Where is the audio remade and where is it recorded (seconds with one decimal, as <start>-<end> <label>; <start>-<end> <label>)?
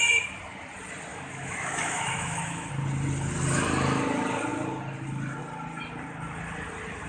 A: 0.0-1.1 recorded; 1.1-2.7 remade; 2.7-7.1 recorded